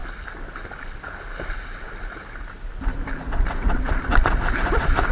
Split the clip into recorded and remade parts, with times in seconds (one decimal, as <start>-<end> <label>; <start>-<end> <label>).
0.0-2.7 recorded; 2.7-5.1 remade